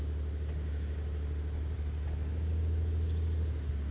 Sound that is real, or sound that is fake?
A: real